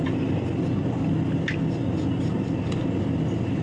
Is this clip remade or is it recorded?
recorded